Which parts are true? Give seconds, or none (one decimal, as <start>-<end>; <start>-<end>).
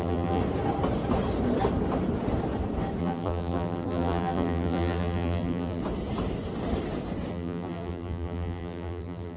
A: 0.4-3.0; 5.8-7.3